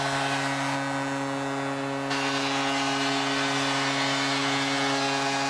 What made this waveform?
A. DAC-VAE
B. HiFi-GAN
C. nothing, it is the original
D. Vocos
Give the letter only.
C